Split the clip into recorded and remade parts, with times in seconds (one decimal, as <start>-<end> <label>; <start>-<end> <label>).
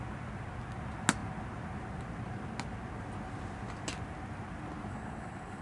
0.0-4.9 recorded; 4.9-5.6 remade